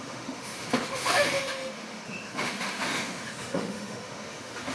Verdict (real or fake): fake